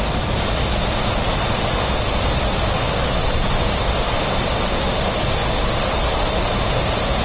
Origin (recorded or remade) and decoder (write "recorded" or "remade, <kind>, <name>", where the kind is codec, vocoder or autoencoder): recorded